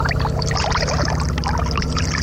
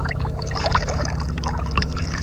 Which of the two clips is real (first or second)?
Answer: first